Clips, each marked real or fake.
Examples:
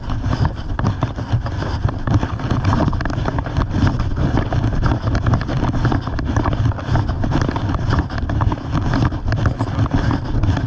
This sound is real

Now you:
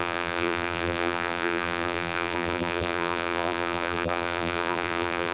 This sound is fake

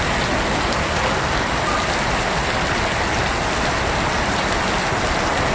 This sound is real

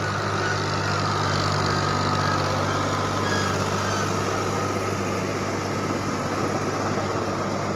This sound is real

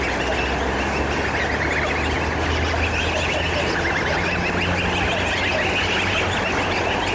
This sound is real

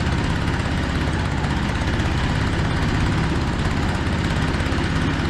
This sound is real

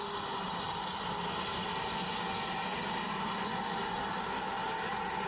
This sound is real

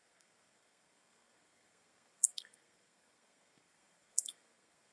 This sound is fake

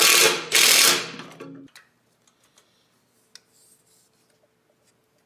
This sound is real